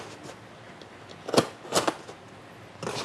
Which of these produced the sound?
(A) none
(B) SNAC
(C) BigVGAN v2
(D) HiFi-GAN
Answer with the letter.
A